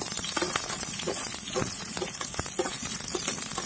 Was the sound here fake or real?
fake